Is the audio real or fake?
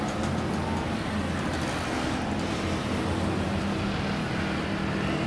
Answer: real